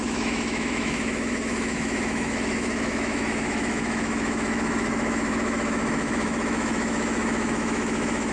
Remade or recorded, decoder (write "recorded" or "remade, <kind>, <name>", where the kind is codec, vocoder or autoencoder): remade, autoencoder, DAC-VAE